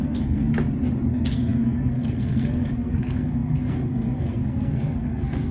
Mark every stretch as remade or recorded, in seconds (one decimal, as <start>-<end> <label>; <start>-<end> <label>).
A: 0.0-0.5 remade; 0.5-1.1 recorded; 1.1-5.5 remade